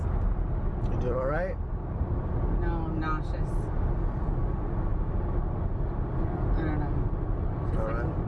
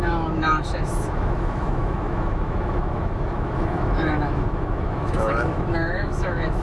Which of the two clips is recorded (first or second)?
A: first